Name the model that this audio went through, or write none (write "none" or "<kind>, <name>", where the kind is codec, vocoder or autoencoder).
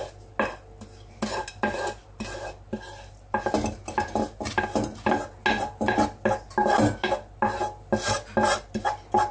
none